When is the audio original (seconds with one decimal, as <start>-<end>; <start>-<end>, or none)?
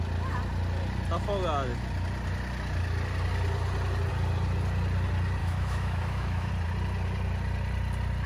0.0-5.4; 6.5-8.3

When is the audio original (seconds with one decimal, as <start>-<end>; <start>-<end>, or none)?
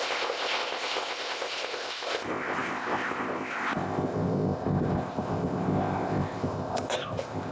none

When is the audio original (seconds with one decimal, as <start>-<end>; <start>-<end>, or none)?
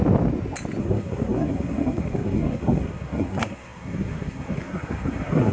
0.0-0.8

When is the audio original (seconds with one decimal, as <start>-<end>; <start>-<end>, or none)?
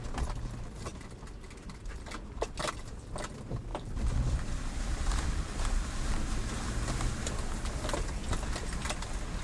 0.0-0.9; 2.7-3.7; 7.1-9.4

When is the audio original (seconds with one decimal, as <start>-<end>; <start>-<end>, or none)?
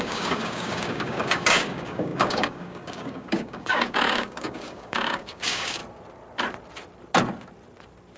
5.8-8.2